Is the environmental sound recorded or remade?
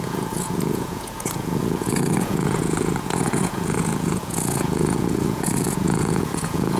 remade